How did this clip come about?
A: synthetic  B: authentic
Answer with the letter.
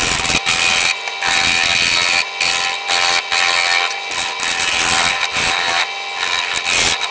B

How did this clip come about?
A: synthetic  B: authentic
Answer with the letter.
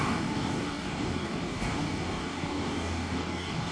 A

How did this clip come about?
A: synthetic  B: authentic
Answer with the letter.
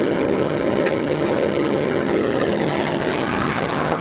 A